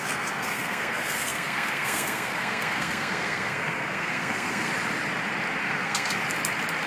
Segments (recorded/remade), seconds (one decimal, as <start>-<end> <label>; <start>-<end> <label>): 0.0-4.7 remade; 4.7-5.6 recorded; 5.6-6.2 remade; 6.2-6.9 recorded